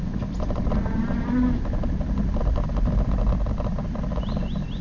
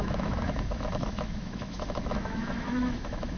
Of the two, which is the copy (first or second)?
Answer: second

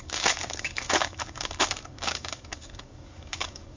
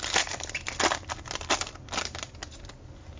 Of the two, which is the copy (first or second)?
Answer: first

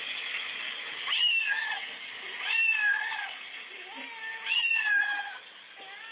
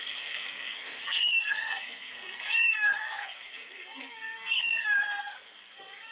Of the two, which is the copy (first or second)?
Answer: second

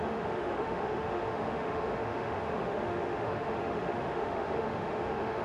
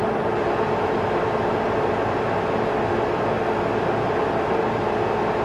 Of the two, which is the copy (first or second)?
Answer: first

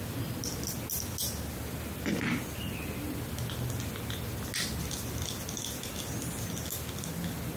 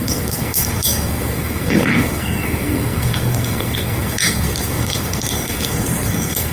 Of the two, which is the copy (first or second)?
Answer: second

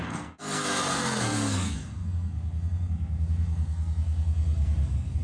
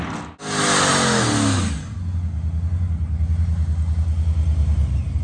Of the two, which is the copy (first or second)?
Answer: first